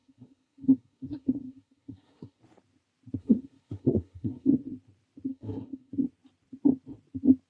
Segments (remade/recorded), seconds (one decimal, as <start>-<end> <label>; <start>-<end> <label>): 0.0-2.4 remade; 2.4-3.2 recorded; 3.2-4.5 remade; 4.5-5.3 recorded; 5.3-5.9 remade; 5.9-7.5 recorded